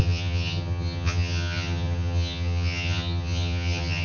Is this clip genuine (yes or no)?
no